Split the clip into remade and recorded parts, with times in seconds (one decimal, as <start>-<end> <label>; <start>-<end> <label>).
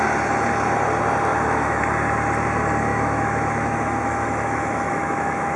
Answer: 0.0-1.3 recorded; 1.3-1.8 remade; 1.8-2.9 recorded; 2.9-5.6 remade